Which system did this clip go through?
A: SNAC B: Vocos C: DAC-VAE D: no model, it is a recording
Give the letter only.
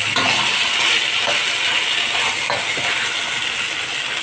D